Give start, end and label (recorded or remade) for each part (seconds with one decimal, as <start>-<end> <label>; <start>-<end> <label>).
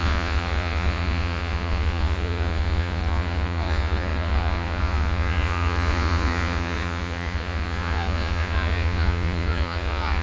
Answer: 0.0-10.2 remade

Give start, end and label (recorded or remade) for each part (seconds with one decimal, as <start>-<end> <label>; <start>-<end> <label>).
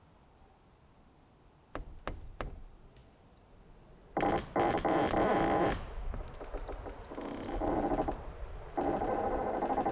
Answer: 0.0-9.9 recorded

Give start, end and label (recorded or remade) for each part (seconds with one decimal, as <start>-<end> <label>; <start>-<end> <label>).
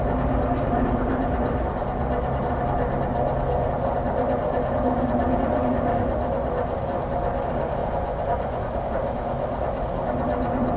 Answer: 0.0-7.8 recorded; 7.8-8.7 remade; 8.7-10.8 recorded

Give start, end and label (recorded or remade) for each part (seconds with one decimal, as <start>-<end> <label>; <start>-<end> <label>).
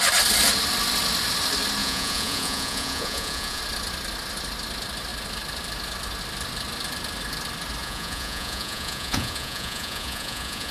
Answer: 0.0-1.8 recorded; 1.8-3.6 remade; 3.6-7.8 recorded; 7.8-10.7 remade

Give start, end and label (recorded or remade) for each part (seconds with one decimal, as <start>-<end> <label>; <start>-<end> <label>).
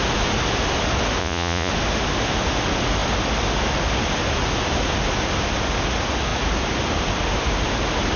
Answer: 0.0-1.2 recorded; 1.2-1.7 remade; 1.7-8.2 recorded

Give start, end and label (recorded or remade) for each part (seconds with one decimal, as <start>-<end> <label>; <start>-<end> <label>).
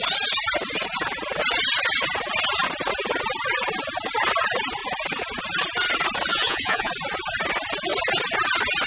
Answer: 0.0-6.3 recorded; 6.3-6.9 remade; 6.9-8.9 recorded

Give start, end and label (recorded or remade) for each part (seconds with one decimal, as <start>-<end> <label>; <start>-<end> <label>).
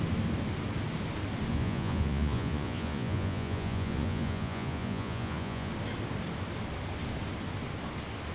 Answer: 0.0-1.5 recorded; 1.5-5.7 remade; 5.7-8.3 recorded